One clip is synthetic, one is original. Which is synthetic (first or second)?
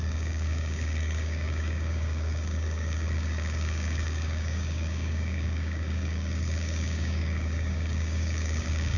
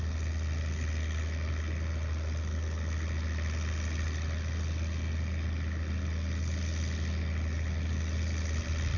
first